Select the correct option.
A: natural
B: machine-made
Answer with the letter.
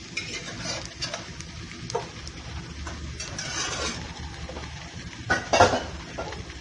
A